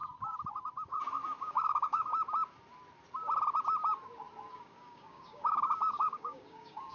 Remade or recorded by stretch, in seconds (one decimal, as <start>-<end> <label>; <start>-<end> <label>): 0.0-1.4 recorded; 1.4-2.1 remade; 2.1-4.5 recorded; 4.5-6.9 remade